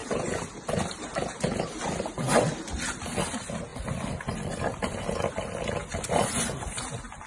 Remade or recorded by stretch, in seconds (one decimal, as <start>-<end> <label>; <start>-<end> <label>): 0.0-3.3 remade; 3.3-3.7 recorded; 3.7-5.3 remade; 5.3-5.8 recorded; 5.8-6.8 remade; 6.8-7.3 recorded